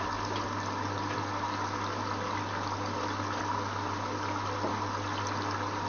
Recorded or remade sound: recorded